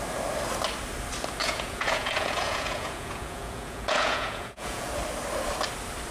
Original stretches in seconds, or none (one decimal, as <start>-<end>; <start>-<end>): 0.0-1.4; 4.9-6.1